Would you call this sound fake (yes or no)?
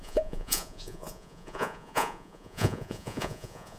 yes